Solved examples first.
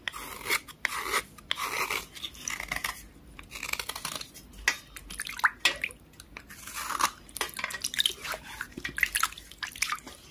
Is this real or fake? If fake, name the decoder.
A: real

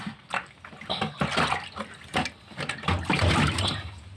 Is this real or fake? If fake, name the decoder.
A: real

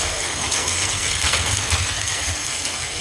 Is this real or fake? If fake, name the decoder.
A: fake, codec, SNAC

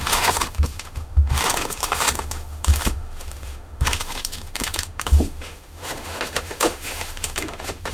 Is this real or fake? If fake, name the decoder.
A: fake, autoencoder, DAC-VAE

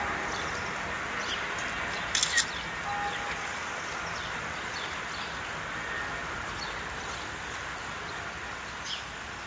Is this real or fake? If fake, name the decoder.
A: real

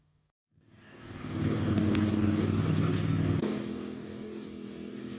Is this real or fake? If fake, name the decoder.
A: fake, codec, DAC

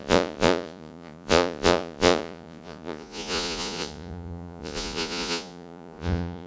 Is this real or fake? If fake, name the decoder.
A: fake, vocoder, Vocos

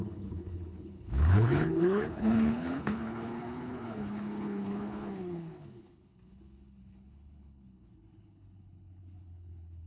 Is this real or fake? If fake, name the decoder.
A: fake, codec, HILCodec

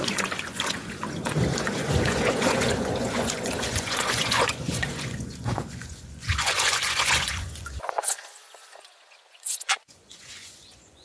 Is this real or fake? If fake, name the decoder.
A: fake, vocoder, Vocos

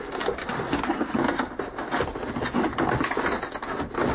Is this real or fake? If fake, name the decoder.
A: real